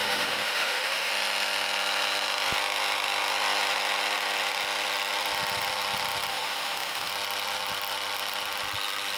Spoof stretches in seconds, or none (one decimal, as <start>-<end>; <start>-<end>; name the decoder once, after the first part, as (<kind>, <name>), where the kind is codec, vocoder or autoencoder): 0.0-1.1 (autoencoder, DAC-VAE); 6.3-7.1